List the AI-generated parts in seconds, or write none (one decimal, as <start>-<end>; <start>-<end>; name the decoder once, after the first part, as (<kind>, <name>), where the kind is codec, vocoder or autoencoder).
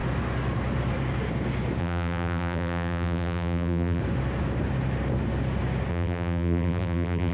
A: 1.8-4.0 (vocoder, BigVGAN v2); 5.9-7.3